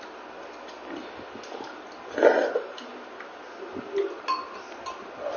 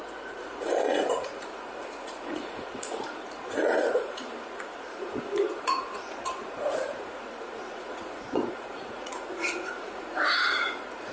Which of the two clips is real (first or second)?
first